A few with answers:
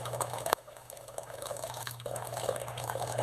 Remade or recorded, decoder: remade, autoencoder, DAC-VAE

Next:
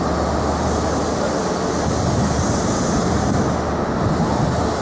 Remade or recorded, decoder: recorded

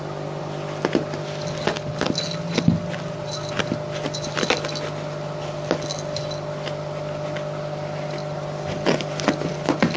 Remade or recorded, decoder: recorded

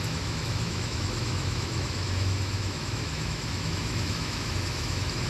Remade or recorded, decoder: remade, autoencoder, DAC-VAE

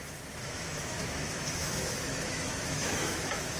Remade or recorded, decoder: remade, autoencoder, DAC-VAE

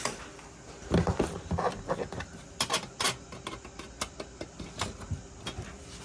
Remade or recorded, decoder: recorded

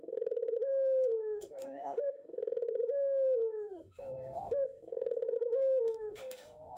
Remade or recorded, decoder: remade, autoencoder, DAC-VAE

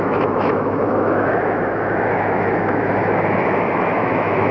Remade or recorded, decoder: remade, autoencoder, DAC-VAE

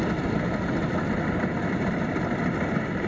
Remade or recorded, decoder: recorded